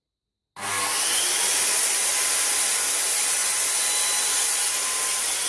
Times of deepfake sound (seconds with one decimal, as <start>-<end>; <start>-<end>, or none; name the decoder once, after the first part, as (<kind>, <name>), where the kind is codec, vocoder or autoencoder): none